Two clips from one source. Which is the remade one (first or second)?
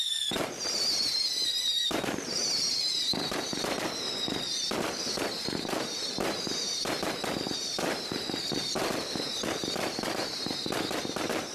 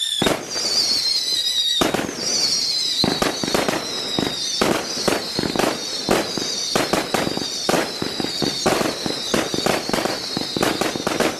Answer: first